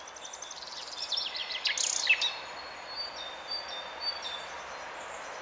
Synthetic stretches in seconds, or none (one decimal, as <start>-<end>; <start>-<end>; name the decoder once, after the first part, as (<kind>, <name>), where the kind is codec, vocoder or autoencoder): none